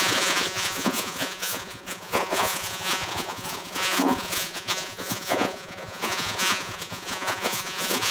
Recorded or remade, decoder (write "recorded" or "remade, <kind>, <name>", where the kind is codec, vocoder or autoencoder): remade, vocoder, Vocos